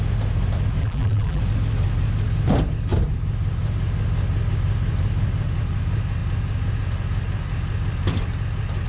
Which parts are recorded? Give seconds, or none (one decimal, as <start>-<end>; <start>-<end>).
0.0-0.8; 1.4-8.9